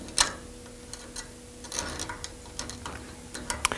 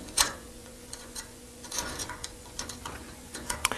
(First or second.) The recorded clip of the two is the first